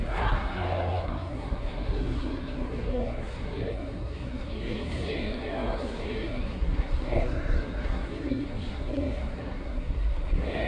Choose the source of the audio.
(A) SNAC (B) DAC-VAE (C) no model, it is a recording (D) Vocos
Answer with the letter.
A